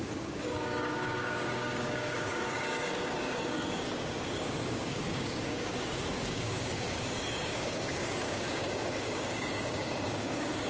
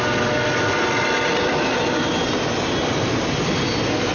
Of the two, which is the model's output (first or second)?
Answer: first